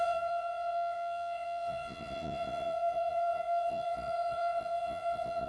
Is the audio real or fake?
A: fake